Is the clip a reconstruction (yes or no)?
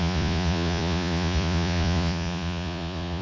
yes